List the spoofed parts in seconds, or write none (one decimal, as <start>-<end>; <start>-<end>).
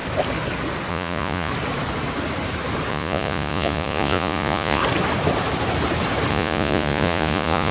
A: 0.9-1.5; 2.9-4.8; 6.3-7.7